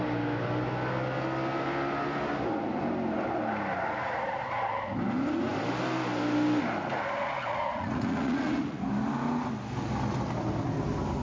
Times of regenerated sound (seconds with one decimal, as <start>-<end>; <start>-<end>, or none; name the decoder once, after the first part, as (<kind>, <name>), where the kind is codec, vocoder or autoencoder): 7.5-8.8 (vocoder, Vocos)